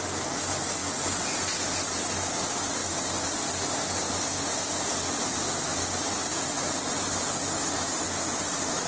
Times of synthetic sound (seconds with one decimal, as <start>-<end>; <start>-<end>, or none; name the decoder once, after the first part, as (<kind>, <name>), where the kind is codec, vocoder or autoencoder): none